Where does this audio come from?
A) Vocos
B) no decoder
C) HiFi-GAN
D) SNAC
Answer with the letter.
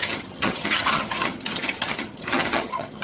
C